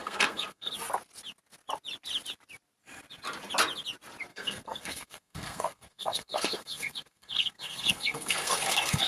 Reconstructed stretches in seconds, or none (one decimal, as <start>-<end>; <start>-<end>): 0.0-0.7; 4.3-9.1